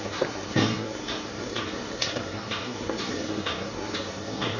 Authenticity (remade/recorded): remade